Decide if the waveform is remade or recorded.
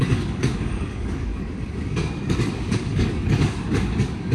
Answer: remade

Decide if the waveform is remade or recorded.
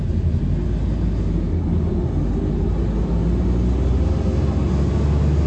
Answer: recorded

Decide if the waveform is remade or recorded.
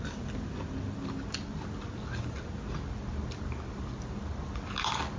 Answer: recorded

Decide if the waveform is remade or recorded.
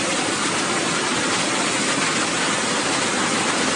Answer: recorded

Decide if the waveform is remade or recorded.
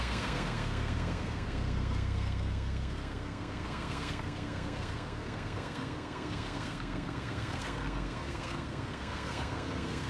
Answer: remade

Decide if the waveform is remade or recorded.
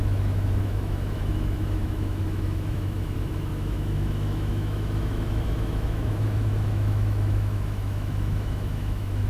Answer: remade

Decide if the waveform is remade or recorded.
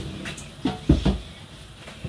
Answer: recorded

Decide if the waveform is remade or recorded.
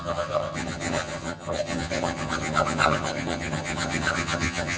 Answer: remade